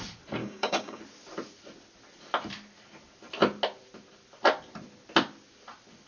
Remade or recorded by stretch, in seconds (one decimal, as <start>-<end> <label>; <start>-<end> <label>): 0.0-0.4 recorded; 0.4-1.0 remade; 1.0-6.1 recorded